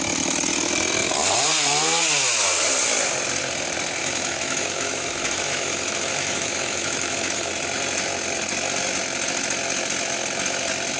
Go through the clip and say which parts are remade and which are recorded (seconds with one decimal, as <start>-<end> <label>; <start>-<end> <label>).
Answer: 0.0-4.0 recorded; 4.0-7.5 remade; 7.5-11.0 recorded